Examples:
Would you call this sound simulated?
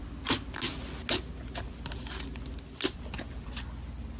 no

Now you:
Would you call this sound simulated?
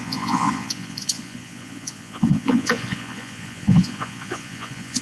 yes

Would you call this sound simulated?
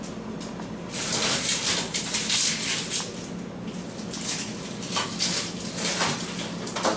yes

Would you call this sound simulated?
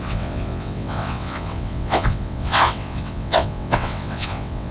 yes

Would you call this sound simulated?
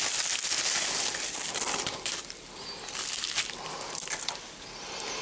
no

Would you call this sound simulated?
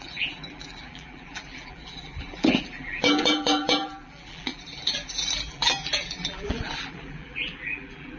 yes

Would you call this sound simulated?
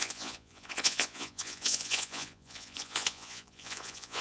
yes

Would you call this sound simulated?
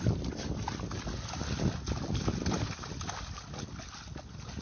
no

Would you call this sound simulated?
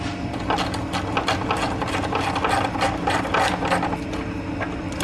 no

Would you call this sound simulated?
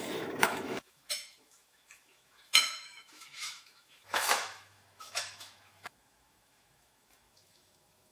yes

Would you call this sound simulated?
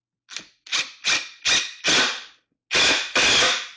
no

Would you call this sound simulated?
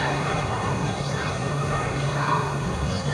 yes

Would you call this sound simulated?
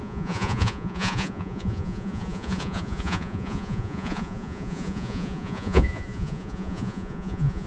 yes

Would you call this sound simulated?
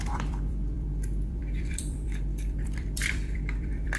yes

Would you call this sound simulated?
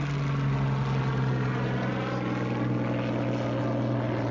no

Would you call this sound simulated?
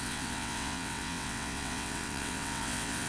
yes